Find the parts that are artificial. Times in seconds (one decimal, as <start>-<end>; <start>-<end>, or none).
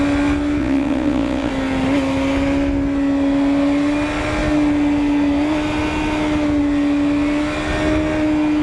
0.6-1.5